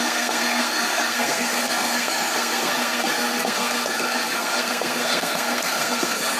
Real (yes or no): no